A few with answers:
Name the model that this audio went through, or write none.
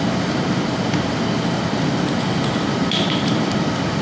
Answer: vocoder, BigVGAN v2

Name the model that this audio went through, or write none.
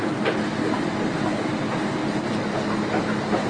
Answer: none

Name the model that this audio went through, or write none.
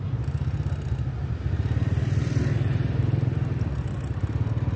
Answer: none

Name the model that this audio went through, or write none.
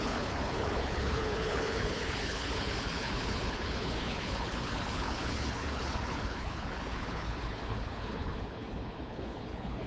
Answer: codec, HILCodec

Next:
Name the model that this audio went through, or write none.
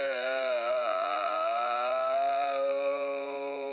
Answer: vocoder, BigVGAN v2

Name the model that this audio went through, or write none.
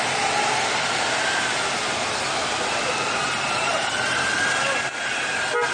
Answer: none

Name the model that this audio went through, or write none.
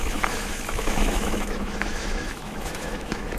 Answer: autoencoder, DAC-VAE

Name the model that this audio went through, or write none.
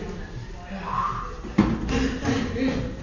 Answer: none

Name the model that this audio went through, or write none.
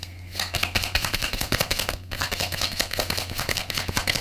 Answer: codec, SNAC